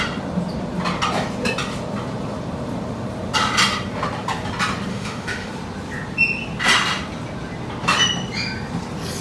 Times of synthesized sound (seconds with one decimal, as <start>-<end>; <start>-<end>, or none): 4.9-5.5